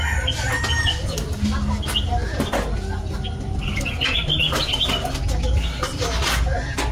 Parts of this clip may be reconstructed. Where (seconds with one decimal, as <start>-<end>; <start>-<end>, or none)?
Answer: none